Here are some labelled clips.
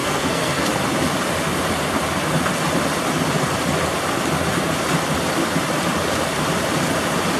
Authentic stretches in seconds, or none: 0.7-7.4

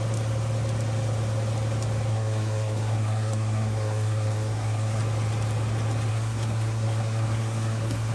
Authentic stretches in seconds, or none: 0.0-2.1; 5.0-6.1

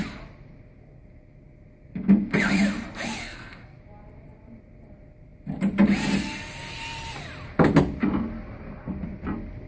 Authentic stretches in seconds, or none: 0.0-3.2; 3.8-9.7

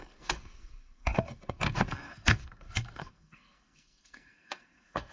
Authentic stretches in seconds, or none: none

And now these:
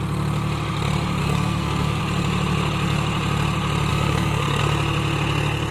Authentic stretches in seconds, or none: 0.0-1.2; 2.0-3.9; 4.6-5.7

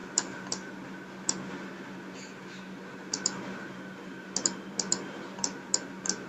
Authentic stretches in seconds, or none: 0.0-6.3

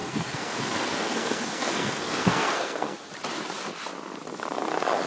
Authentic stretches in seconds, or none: 3.1-5.1

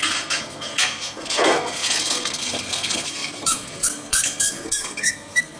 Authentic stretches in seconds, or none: none